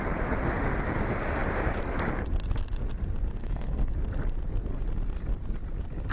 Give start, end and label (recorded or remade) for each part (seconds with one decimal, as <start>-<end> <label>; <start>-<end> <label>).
0.0-3.4 recorded; 3.4-3.9 remade; 3.9-6.1 recorded